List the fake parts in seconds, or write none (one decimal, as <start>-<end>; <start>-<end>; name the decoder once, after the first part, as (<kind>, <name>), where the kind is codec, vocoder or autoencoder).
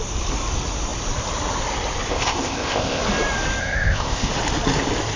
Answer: 2.1-3.0 (codec, ZipCodec); 3.6-4.3